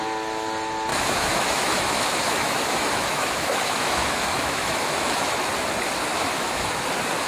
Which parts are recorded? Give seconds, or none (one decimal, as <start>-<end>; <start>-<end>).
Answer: 0.0-0.9; 5.3-6.1; 6.8-7.3